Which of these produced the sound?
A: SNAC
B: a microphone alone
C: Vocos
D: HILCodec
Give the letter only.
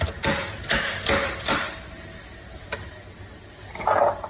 B